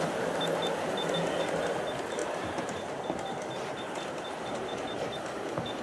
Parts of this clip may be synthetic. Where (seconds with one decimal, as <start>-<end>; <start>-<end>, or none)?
2.2-5.8